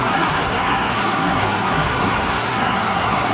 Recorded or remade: remade